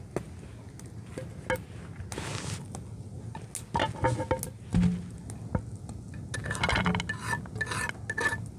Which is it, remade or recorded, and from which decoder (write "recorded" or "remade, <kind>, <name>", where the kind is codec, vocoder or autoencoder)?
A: recorded